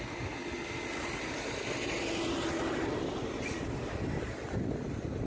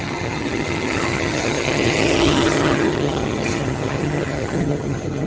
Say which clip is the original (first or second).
first